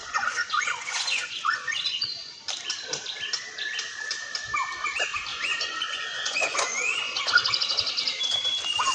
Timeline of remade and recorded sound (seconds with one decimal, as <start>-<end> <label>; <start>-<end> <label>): 0.0-2.3 remade; 2.3-5.3 recorded; 5.3-7.2 remade; 7.2-8.9 recorded